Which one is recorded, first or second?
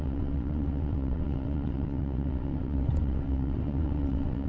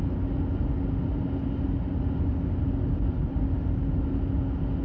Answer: second